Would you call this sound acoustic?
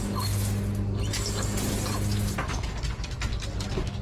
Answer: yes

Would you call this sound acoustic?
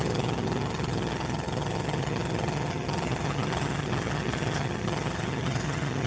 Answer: no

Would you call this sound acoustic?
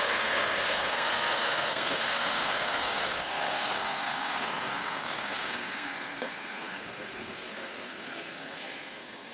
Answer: no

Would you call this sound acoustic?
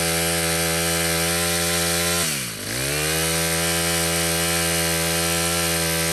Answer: yes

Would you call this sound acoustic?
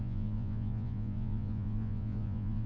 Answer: no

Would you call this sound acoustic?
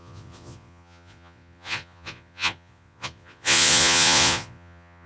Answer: no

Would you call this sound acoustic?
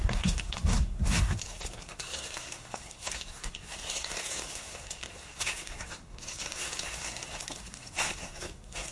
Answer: no